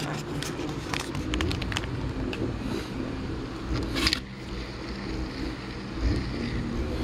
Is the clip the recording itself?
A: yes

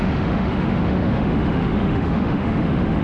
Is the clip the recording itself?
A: no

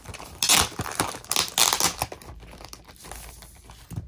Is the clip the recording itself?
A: yes